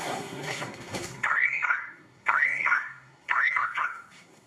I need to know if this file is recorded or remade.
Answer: remade